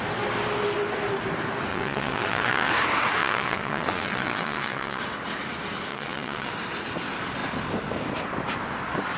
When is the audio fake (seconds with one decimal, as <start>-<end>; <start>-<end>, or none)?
1.7-2.7; 3.2-5.0; 5.9-6.5